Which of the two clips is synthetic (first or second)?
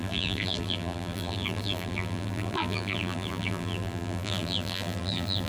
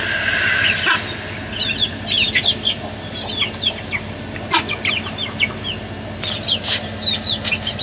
first